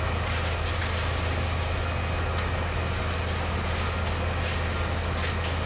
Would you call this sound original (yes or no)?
yes